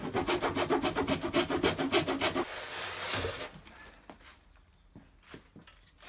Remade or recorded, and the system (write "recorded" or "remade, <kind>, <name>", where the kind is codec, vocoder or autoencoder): recorded